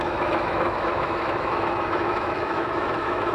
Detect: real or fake fake